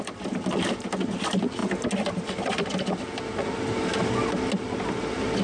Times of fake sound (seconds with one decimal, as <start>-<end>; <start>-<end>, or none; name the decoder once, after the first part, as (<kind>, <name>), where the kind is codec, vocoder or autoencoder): none